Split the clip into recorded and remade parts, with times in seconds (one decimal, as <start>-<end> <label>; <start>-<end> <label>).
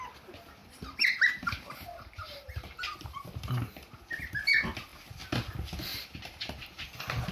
0.0-0.6 recorded; 0.6-2.8 remade; 2.8-5.9 recorded; 5.9-6.8 remade; 6.8-7.3 recorded